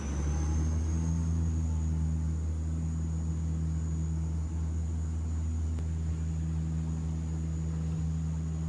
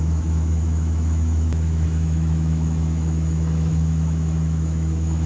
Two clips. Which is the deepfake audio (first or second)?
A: second